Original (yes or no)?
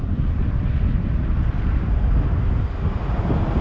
yes